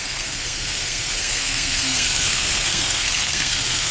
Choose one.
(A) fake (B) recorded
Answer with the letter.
A